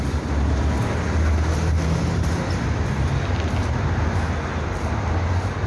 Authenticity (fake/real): real